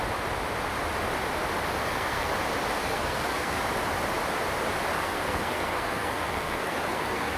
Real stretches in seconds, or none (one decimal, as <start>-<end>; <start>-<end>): 0.0-1.8; 2.3-2.8; 3.6-4.9